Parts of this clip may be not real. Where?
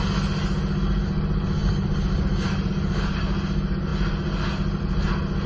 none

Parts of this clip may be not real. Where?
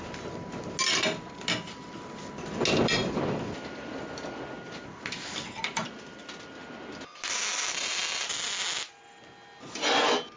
none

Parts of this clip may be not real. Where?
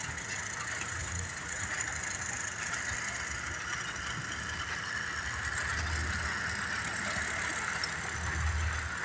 1.0-1.8 (vocoder, Vocos)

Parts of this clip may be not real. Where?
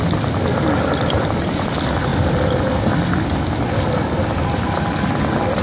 none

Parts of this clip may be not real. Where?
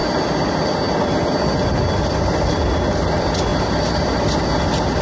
none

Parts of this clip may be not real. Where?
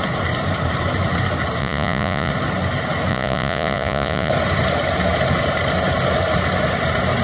1.6-2.3 (vocoder, Vocos); 3.1-4.3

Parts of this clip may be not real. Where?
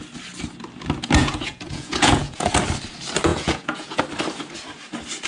1.2-2.5 (vocoder, Vocos); 3.3-4.0